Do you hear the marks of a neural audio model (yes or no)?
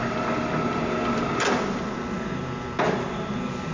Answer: no